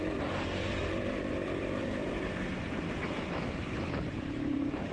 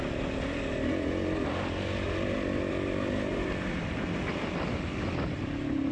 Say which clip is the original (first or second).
second